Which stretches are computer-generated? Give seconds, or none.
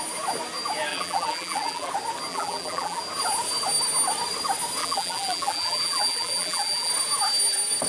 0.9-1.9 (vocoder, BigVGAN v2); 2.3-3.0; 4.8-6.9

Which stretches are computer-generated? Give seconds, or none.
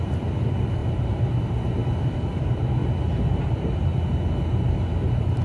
0.0-1.8 (vocoder, BigVGAN v2); 2.4-2.8; 3.4-3.9; 4.7-5.4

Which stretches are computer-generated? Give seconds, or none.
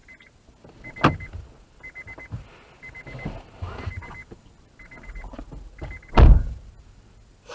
none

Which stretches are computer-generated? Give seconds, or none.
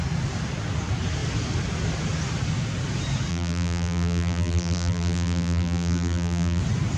3.3-6.6 (vocoder, BigVGAN v2)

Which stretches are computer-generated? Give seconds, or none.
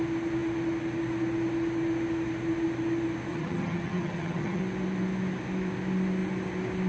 3.3-4.6 (vocoder, HiFi-GAN)